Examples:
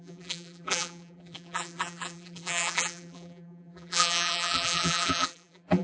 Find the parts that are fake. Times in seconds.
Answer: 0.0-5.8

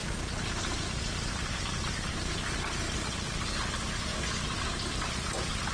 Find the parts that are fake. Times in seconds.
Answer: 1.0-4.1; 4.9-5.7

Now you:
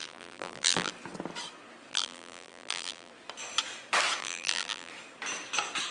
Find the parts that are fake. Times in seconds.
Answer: 0.0-0.9; 1.9-3.1; 4.2-4.9

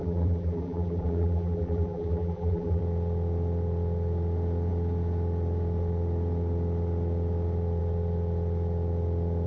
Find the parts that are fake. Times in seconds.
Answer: 0.0-2.8

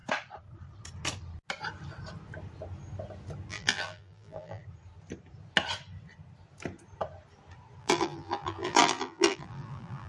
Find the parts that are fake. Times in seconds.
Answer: 3.5-4.6; 7.8-10.1

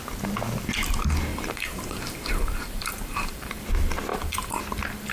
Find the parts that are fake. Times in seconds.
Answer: 1.3-3.6; 4.1-4.6